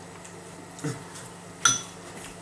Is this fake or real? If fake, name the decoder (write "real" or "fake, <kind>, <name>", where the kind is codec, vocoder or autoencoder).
real